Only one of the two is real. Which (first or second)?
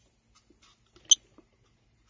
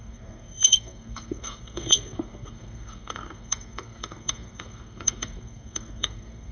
first